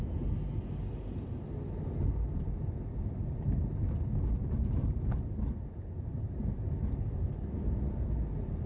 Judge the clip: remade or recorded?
recorded